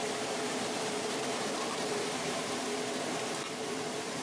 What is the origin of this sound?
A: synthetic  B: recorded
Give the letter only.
A